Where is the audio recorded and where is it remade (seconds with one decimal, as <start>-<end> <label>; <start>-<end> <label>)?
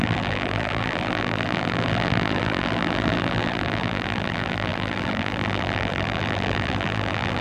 0.0-7.4 remade